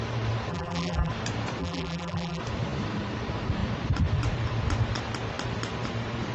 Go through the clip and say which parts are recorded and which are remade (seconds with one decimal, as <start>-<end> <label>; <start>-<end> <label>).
0.0-0.5 recorded; 0.5-1.1 remade; 1.1-1.6 recorded; 1.6-2.4 remade; 2.4-6.3 recorded

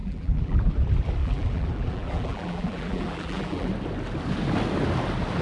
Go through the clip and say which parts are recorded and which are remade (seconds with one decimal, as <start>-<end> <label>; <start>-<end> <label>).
0.0-0.7 remade; 0.7-1.2 recorded; 1.2-3.7 remade; 3.7-5.4 recorded

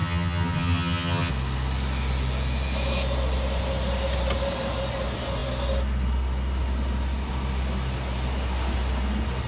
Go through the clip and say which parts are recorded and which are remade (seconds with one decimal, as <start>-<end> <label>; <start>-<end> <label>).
0.0-1.3 remade; 1.3-9.5 recorded

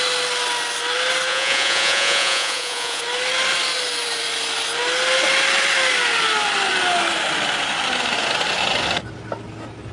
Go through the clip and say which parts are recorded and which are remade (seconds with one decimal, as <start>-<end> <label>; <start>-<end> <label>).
0.0-1.3 recorded; 1.3-3.0 remade; 3.0-9.9 recorded

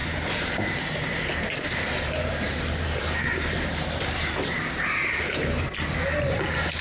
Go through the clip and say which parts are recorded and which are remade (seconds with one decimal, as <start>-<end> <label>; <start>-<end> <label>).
0.0-6.8 remade